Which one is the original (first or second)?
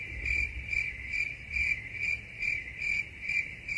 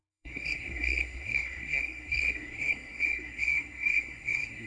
first